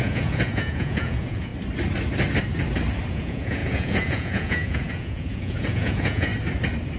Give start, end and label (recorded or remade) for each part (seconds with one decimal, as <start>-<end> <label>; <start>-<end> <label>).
0.0-1.5 remade; 1.5-3.1 recorded; 3.1-6.3 remade; 6.3-7.0 recorded

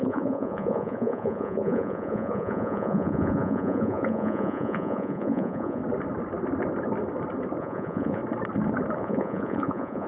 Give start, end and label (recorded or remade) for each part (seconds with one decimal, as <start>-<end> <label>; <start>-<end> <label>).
0.0-5.8 remade; 5.8-7.6 recorded; 7.6-8.2 remade; 8.2-9.0 recorded; 9.0-10.1 remade

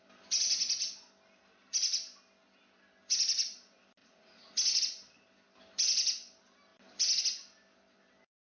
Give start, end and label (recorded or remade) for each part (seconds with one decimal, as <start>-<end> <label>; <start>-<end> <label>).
0.0-4.0 recorded; 4.0-4.8 remade; 4.8-8.5 recorded

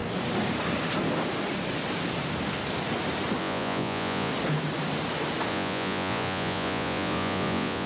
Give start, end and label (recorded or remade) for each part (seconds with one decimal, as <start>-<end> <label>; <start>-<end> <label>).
0.0-3.4 recorded; 3.4-4.3 remade; 4.3-5.5 recorded; 5.5-7.9 remade

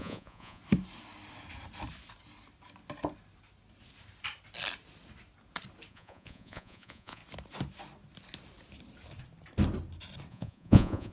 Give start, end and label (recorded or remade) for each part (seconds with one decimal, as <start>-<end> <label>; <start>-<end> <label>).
0.0-0.6 remade; 0.6-5.9 recorded; 5.9-7.2 remade; 7.2-10.3 recorded; 10.3-11.1 remade

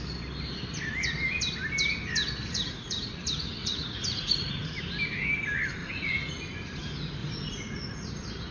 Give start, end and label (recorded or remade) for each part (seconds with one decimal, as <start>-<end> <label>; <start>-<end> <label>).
0.0-2.4 recorded; 2.4-3.1 remade; 3.1-3.6 recorded; 3.6-4.8 remade; 4.8-5.8 recorded; 5.8-6.3 remade; 6.3-7.2 recorded; 7.2-8.1 remade; 8.1-8.5 recorded

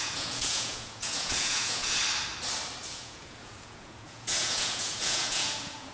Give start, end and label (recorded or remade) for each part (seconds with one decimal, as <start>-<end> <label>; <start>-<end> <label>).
0.0-2.0 remade; 2.0-2.9 recorded; 2.9-5.9 remade

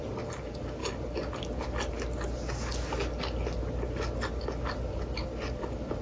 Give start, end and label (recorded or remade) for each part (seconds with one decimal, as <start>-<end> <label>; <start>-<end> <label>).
0.0-6.0 recorded